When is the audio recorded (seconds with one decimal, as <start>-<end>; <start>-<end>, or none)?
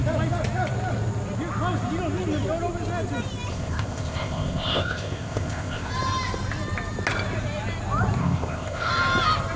0.0-3.5; 5.9-8.2; 8.9-9.6